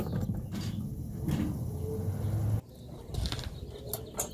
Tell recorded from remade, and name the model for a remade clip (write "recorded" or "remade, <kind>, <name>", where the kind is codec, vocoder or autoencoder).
recorded